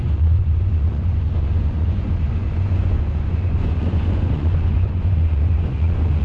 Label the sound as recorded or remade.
remade